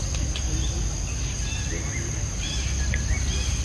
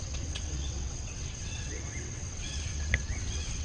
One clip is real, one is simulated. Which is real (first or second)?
first